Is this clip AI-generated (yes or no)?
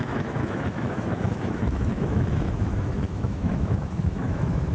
yes